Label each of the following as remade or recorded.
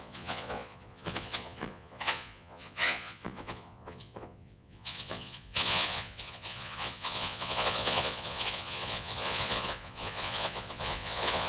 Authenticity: remade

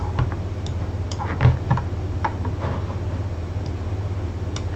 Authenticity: recorded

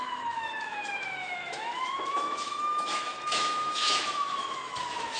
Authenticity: remade